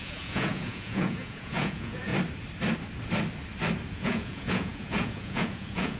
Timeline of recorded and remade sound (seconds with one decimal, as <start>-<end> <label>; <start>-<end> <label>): 0.0-2.1 remade; 2.1-3.9 recorded; 3.9-6.0 remade